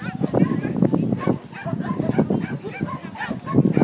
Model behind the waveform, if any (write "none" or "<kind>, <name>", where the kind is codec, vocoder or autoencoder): none